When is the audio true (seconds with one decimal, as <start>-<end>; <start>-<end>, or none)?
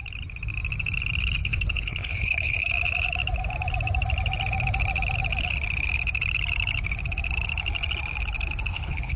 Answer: 0.0-1.4; 2.7-8.7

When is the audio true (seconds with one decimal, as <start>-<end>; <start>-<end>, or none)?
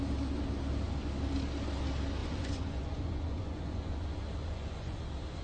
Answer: 0.0-2.2; 5.0-5.4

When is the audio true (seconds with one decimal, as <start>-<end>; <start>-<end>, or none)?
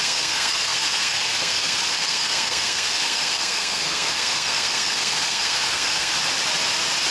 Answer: 6.1-7.1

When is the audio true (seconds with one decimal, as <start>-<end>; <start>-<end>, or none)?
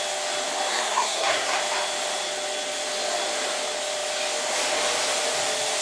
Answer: 0.0-0.7; 1.6-5.8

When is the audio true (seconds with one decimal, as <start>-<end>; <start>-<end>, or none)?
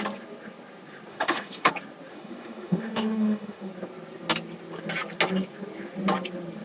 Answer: 0.0-1.1; 1.7-2.1; 3.7-6.6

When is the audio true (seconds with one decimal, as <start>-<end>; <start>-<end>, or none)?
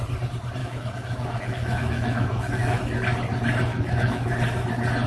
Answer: 0.0-0.6; 2.8-3.7; 4.3-5.1